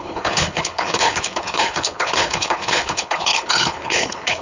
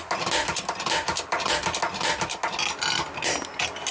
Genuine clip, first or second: second